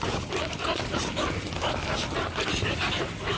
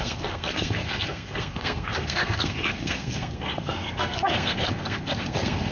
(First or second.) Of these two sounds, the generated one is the second